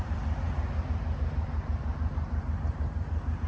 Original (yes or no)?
no